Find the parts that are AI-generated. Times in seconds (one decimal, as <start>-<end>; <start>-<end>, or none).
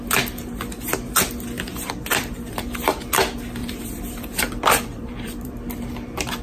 2.1-3.0; 3.6-5.5